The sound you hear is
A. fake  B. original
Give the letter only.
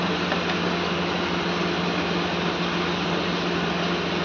B